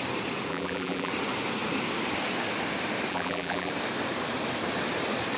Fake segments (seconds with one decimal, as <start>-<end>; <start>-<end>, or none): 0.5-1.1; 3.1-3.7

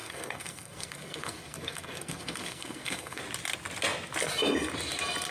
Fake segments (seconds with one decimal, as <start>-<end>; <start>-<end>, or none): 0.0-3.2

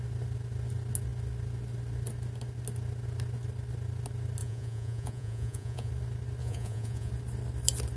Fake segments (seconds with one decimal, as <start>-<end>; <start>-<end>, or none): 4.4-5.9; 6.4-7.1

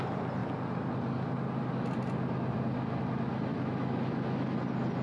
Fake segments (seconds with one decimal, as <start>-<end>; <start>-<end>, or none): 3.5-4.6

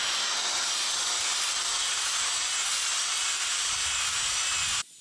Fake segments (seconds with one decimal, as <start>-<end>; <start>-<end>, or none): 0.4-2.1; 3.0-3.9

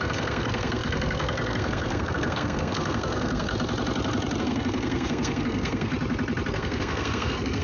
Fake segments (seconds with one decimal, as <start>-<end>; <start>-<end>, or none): 0.0-3.5; 4.4-5.9; 6.5-7.6